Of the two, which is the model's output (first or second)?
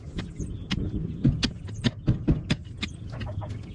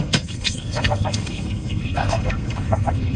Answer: second